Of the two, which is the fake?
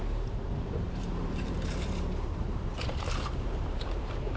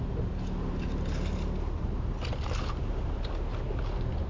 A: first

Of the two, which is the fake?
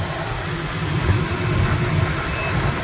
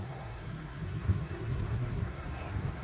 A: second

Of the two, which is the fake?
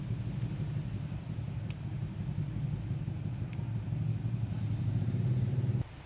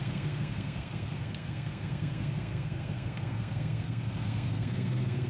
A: second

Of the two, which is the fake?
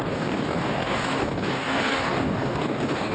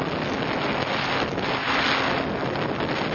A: first